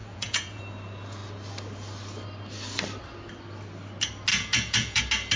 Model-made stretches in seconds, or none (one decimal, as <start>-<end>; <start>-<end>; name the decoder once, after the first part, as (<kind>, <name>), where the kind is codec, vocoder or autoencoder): 0.0-0.6 (vocoder, Vocos); 4.3-5.0

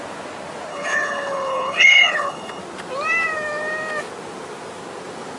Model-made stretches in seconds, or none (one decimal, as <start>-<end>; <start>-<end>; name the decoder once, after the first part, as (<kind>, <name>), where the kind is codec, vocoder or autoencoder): 0.7-2.6 (codec, HILCodec)

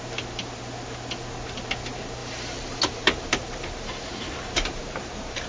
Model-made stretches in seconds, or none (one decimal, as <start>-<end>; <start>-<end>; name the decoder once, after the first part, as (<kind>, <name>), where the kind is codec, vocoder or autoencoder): 2.2-5.5 (vocoder, BigVGAN v2)

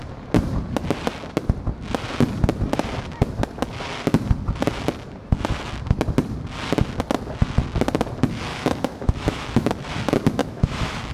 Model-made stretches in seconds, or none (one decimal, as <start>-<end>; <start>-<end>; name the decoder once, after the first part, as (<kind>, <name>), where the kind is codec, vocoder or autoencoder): 8.5-9.7 (autoencoder, DAC-VAE); 10.4-11.1

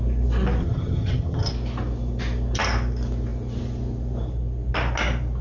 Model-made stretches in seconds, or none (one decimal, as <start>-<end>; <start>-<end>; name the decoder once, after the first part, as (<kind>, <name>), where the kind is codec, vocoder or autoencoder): 0.6-1.5 (vocoder, HiFi-GAN)

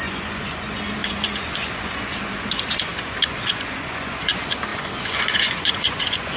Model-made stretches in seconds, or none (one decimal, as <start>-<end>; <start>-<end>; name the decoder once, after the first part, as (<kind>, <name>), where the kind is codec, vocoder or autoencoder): 0.0-6.4 (vocoder, Vocos)